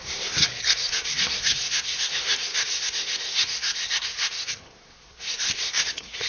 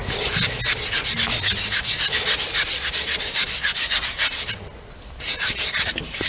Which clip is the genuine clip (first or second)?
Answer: second